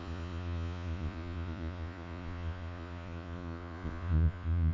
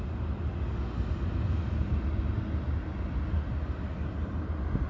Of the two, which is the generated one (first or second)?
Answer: first